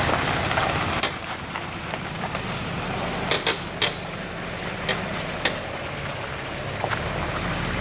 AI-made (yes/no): no